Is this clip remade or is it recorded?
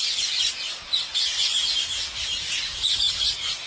recorded